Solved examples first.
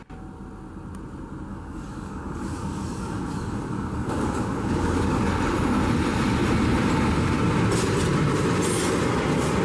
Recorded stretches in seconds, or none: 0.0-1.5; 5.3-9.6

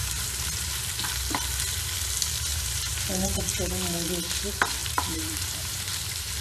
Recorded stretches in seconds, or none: 1.1-2.5; 3.4-4.8

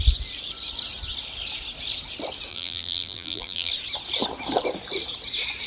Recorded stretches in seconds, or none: 0.0-2.5; 3.7-5.7

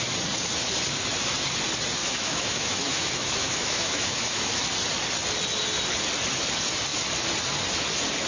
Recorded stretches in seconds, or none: 0.0-2.0; 4.6-8.3